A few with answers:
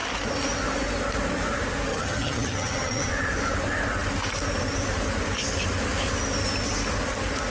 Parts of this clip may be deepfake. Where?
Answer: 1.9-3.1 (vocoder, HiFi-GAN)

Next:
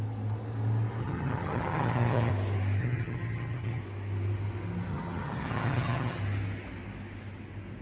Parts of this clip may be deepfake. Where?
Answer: 1.0-2.3 (vocoder, HiFi-GAN); 2.8-3.8; 4.9-6.2